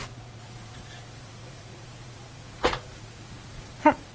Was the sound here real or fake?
fake